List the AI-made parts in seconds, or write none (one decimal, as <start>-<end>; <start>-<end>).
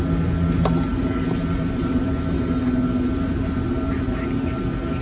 none